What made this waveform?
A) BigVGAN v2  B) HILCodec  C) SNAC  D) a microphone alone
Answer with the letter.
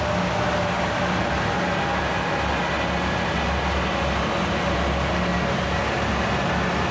D